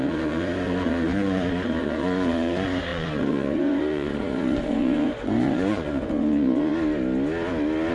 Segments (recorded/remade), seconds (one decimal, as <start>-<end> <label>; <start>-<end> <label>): 0.0-6.7 remade; 6.7-7.9 recorded